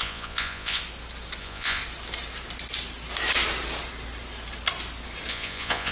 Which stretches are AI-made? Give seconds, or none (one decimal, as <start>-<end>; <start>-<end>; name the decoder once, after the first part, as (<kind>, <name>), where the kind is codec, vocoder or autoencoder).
0.0-0.8 (vocoder, Vocos); 1.4-1.8; 5.3-5.9

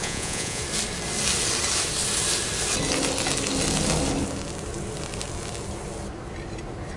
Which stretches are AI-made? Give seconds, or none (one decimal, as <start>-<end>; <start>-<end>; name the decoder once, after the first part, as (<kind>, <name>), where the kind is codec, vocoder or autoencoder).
0.0-0.6 (vocoder, Vocos)

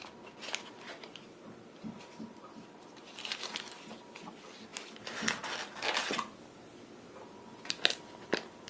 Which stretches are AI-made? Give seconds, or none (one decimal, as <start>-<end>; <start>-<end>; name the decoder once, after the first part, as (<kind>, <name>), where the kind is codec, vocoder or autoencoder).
none

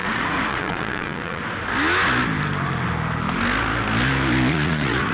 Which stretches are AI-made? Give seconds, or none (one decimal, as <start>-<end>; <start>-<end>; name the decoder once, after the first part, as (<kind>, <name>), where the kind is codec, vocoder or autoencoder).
0.0-1.4 (vocoder, Vocos); 4.5-5.1